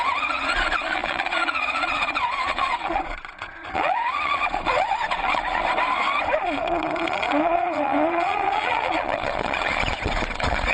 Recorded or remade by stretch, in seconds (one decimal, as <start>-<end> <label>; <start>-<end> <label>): 0.0-5.6 remade; 5.6-6.4 recorded; 6.4-10.7 remade